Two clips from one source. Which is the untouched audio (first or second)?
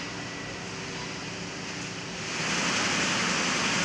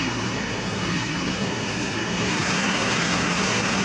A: first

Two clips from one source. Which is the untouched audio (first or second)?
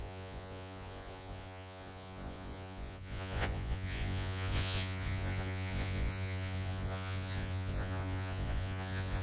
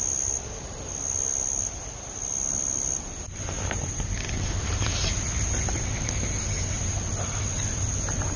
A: second